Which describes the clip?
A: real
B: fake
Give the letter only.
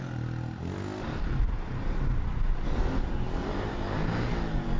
A